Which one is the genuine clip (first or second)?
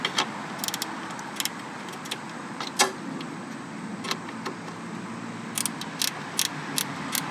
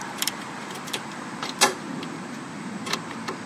first